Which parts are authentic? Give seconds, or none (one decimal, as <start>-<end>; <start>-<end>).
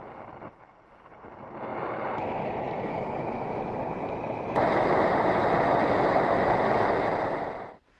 0.0-8.0